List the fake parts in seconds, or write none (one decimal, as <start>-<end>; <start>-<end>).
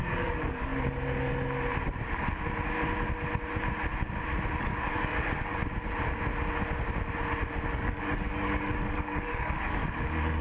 0.0-0.7; 4.6-5.6; 7.7-9.8